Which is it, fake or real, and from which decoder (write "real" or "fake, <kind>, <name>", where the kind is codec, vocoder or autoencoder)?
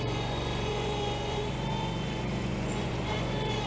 fake, vocoder, Vocos